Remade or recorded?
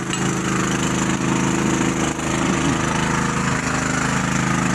recorded